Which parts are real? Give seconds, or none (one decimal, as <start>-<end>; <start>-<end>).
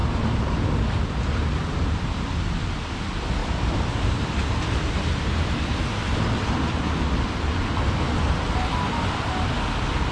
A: 1.5-3.4; 7.8-10.1